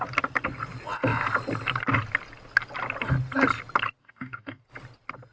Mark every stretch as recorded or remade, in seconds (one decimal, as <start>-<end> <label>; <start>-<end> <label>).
0.0-4.0 recorded; 4.0-4.6 remade; 4.6-5.3 recorded